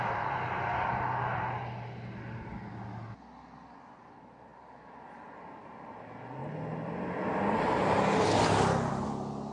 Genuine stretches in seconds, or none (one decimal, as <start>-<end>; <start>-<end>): 0.0-9.5